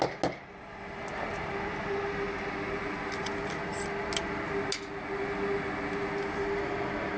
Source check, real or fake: real